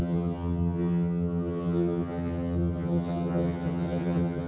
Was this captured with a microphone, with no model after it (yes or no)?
no